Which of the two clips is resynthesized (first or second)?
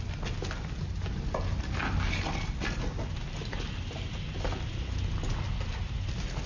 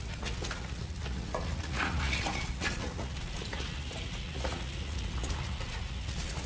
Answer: second